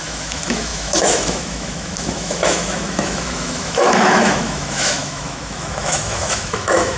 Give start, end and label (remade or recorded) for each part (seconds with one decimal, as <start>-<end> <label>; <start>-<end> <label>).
0.0-7.0 remade